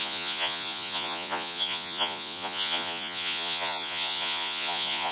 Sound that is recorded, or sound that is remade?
remade